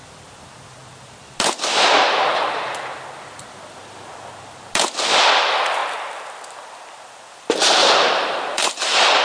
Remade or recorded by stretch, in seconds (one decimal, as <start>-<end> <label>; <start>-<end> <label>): 0.0-7.8 recorded; 7.8-9.2 remade